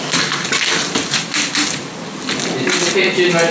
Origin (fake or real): real